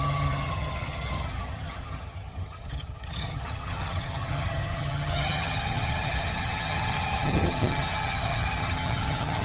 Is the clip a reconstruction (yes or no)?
yes